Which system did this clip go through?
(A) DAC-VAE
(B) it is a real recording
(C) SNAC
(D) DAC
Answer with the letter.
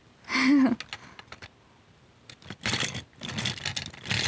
B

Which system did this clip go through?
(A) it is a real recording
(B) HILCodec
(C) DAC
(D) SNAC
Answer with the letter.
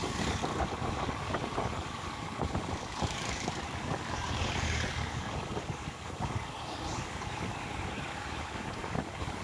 C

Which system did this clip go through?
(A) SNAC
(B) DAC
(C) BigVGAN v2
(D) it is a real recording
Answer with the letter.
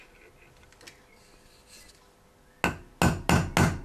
D